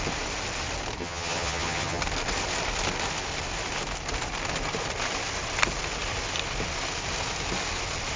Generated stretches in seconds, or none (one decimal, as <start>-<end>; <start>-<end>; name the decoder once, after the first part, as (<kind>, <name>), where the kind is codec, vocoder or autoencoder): 1.0-2.0 (vocoder, HiFi-GAN)